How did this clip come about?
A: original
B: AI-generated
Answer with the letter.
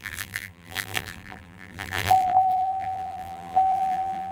B